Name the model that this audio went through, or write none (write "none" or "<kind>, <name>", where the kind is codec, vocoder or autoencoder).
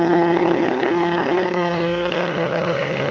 codec, SNAC